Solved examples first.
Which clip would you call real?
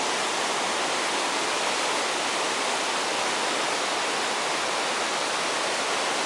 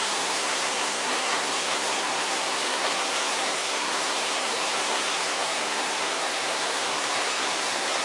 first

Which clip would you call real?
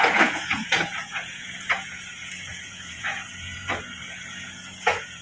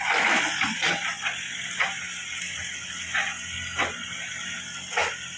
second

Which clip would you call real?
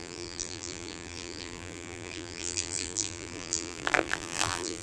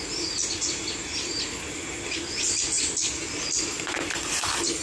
second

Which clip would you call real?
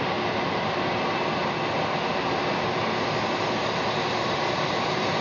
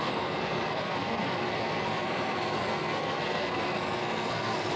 first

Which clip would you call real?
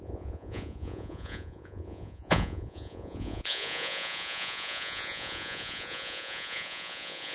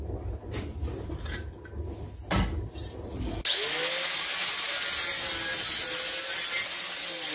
second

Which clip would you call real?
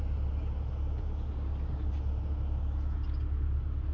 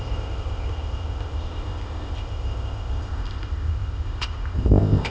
first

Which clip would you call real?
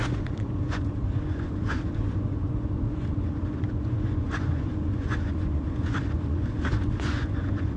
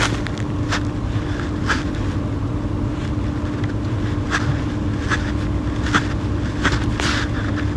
second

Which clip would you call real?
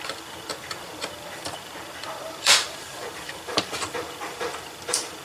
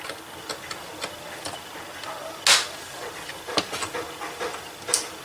second